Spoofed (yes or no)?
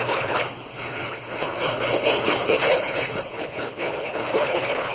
yes